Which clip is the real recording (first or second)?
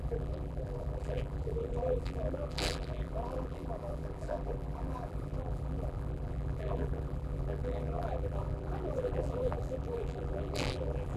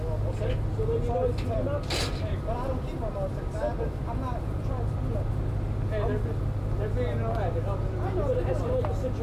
second